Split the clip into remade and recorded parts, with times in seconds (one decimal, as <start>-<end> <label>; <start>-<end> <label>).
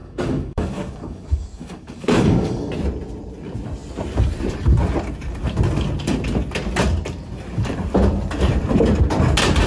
0.0-2.7 remade; 2.7-9.7 recorded